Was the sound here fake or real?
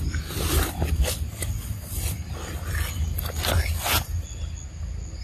real